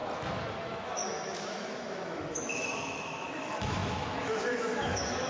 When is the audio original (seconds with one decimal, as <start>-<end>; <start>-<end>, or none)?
0.0-0.5